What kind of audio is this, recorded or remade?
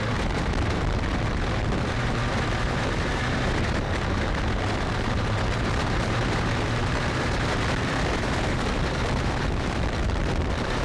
remade